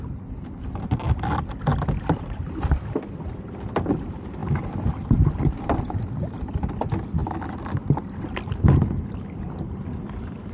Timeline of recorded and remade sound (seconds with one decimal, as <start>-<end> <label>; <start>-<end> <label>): 0.0-10.5 recorded